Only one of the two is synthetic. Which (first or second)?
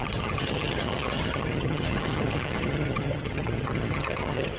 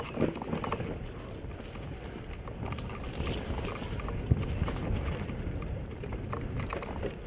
first